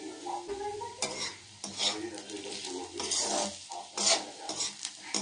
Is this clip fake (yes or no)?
no